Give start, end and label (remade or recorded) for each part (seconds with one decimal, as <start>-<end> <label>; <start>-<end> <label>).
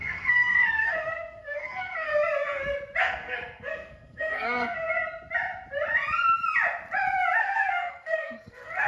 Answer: 0.0-2.1 remade; 2.1-3.0 recorded; 3.0-5.0 remade; 5.0-7.4 recorded; 7.4-8.9 remade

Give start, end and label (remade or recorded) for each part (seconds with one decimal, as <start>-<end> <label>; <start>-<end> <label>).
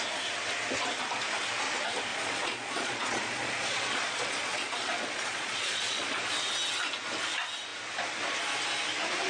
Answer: 0.0-2.1 recorded; 2.1-6.2 remade; 6.2-9.3 recorded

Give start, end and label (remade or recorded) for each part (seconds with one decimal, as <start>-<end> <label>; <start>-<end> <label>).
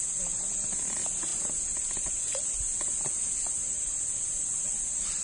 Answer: 0.0-5.2 recorded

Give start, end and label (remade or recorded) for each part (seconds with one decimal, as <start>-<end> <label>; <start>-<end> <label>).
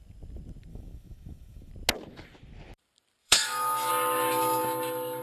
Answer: 0.0-0.7 recorded; 0.7-1.7 remade; 1.7-3.2 recorded; 3.2-3.9 remade; 3.9-5.2 recorded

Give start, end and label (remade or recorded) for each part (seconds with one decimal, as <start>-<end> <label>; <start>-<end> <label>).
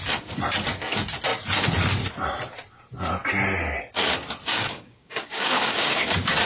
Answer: 0.0-4.5 recorded; 4.5-6.1 remade; 6.1-6.5 recorded